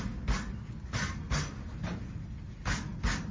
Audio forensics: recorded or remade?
recorded